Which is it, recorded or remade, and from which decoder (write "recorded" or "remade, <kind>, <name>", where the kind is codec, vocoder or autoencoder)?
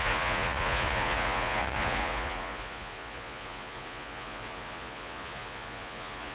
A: remade, vocoder, Vocos